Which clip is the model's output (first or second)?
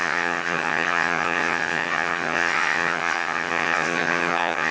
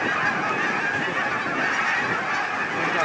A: first